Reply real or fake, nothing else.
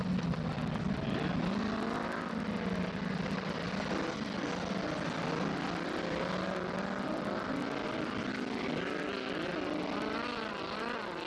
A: real